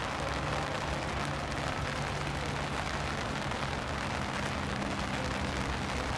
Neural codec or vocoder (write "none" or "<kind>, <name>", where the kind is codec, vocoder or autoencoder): none